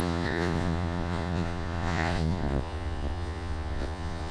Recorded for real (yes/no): no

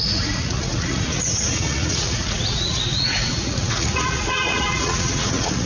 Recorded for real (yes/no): no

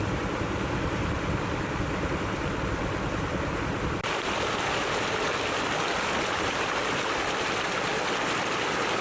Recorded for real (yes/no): yes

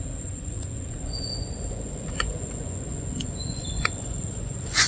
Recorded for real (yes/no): no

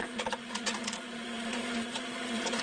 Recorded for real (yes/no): no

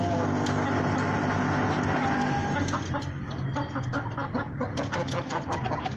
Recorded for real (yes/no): yes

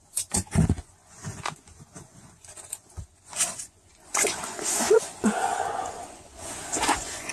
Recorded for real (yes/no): no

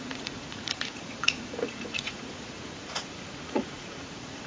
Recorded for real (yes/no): no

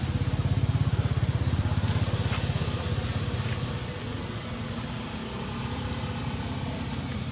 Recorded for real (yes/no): yes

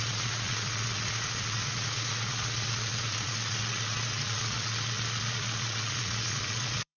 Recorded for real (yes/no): no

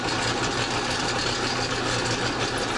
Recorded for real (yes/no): yes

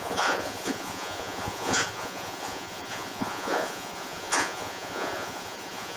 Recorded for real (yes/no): no